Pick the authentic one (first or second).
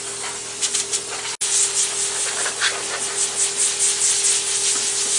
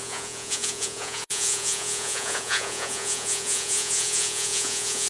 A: first